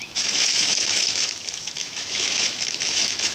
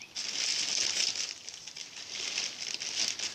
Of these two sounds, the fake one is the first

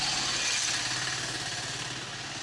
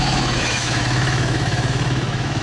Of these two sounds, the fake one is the second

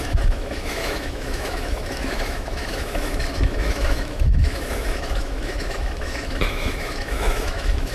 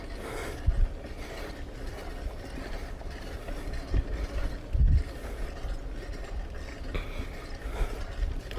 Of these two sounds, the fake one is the first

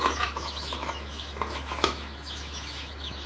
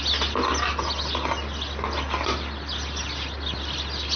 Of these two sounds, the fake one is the first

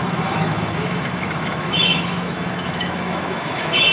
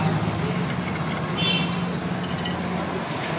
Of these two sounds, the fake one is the first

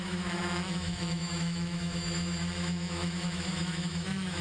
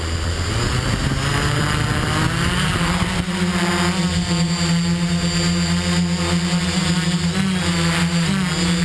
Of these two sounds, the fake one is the first